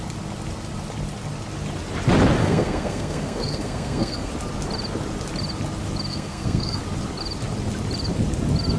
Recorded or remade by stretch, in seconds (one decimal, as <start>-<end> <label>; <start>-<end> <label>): 0.0-2.4 recorded; 2.4-4.3 remade; 4.3-6.1 recorded; 6.1-6.8 remade; 6.8-8.8 recorded